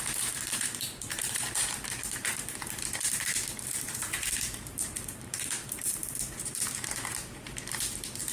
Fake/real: fake